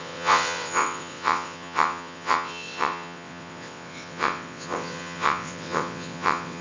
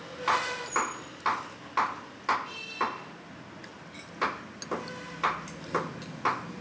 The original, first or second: second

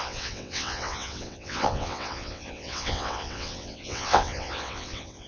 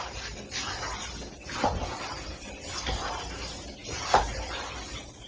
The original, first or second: second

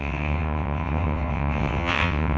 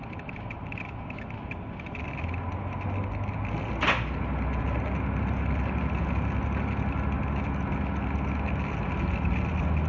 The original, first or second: second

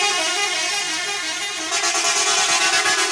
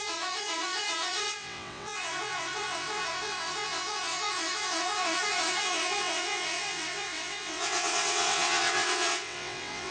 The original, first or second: first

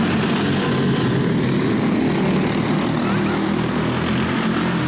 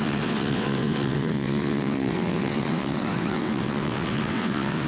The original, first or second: first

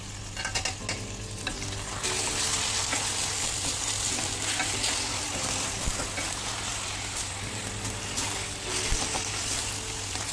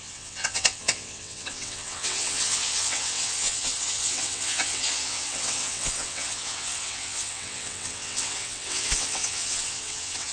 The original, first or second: first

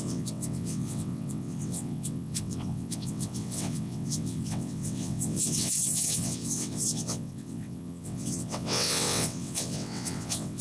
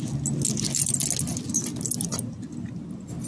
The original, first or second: second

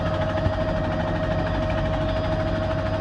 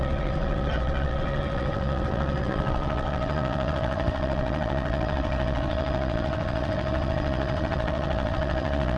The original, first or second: first